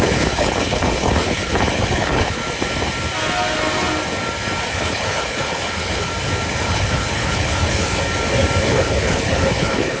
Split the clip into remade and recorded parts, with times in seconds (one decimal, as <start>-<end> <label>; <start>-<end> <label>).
0.0-2.4 remade; 2.4-4.7 recorded; 4.7-6.1 remade; 6.1-6.6 recorded; 6.6-8.0 remade; 8.0-8.6 recorded; 8.6-10.0 remade